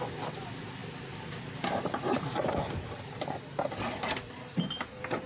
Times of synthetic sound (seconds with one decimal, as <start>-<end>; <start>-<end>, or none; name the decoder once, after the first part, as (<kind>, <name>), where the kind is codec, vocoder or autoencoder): none